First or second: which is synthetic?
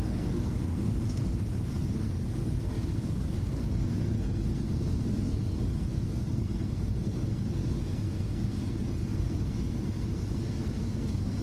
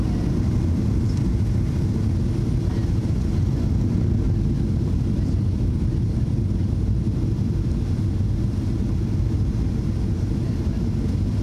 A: first